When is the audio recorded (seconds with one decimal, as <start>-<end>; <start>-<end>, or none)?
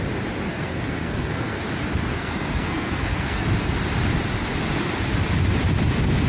0.0-0.5; 1.6-2.1; 3.4-6.3